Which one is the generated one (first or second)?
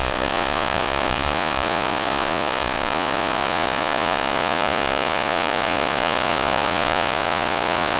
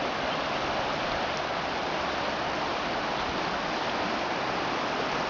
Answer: first